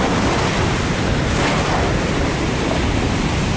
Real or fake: real